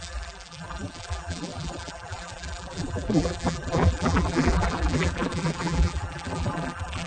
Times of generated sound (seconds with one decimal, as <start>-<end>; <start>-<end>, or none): 0.0-7.1